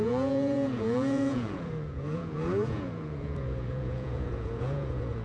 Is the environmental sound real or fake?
fake